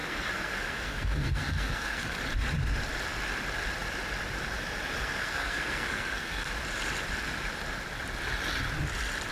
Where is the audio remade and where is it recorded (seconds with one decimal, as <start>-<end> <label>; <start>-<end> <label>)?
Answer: 0.0-2.2 remade; 2.2-5.0 recorded; 5.0-6.5 remade; 6.5-9.3 recorded